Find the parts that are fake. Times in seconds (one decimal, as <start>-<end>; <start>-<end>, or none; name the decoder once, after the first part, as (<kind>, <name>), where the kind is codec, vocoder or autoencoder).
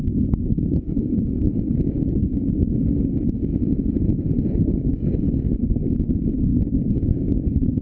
0.0-3.5 (codec, DAC); 4.6-7.8